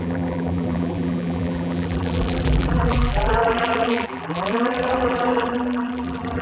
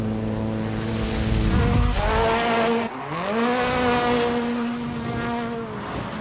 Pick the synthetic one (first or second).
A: first